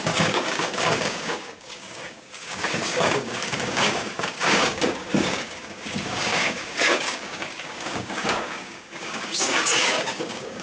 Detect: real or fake fake